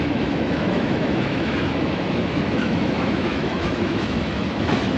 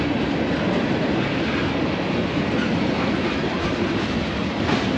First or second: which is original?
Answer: second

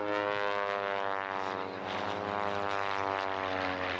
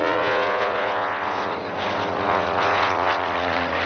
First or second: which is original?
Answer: first